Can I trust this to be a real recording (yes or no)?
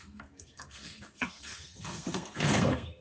no